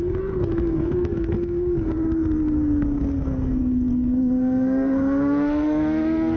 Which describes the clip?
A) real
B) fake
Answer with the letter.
B